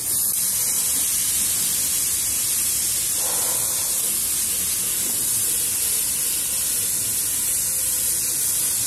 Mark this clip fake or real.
real